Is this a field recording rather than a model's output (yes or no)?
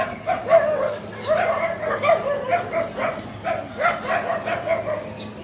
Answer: yes